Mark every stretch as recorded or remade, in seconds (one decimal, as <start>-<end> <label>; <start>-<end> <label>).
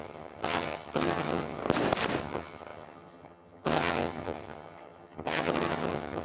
0.0-1.6 remade; 1.6-2.2 recorded; 2.2-6.2 remade